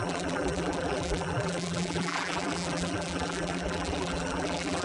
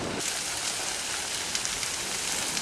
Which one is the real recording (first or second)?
second